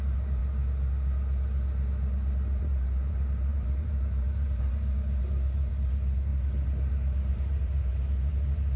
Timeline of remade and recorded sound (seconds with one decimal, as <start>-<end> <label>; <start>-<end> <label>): 0.0-0.4 remade; 0.4-2.6 recorded; 2.6-6.3 remade; 6.3-7.3 recorded; 7.3-8.8 remade